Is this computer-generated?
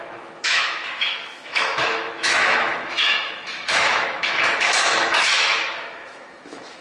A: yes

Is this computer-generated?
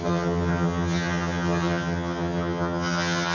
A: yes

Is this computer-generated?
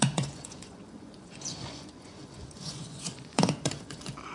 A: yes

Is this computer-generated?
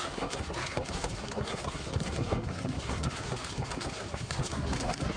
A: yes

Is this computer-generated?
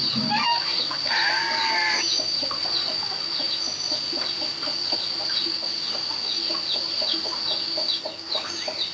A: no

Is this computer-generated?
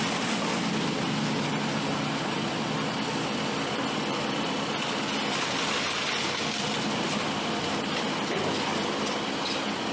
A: no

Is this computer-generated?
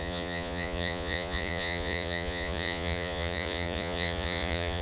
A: yes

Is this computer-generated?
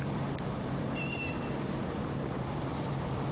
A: yes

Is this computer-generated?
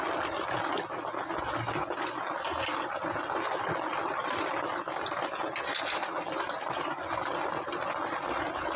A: no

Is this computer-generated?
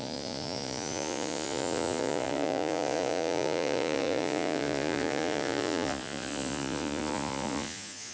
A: yes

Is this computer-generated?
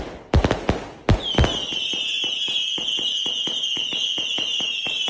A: no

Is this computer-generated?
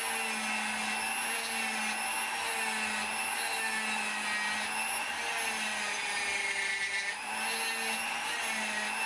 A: no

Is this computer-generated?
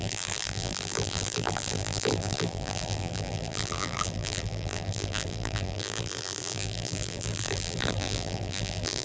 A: yes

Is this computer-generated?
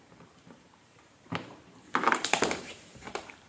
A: yes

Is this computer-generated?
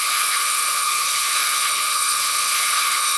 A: yes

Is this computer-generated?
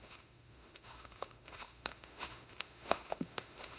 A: yes